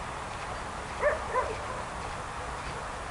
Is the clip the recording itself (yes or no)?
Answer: yes